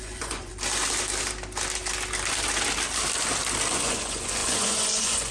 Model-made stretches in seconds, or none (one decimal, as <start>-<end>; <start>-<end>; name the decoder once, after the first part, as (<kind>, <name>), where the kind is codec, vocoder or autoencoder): 0.0-0.5 (vocoder, Vocos); 3.7-5.3

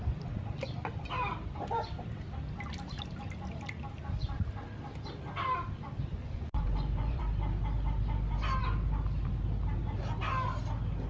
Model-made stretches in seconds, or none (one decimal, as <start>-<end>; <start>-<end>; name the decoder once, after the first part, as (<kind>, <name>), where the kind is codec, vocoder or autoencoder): 6.1-7.2 (vocoder, Vocos)